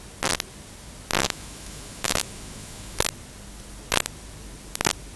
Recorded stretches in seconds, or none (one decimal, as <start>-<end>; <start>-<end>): 0.0-1.2; 3.0-5.2